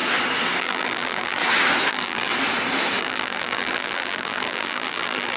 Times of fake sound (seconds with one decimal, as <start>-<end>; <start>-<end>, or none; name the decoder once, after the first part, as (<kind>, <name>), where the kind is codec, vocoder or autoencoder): 0.6-1.4 (vocoder, BigVGAN v2); 1.9-2.3; 3.0-5.4